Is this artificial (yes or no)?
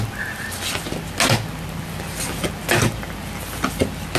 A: no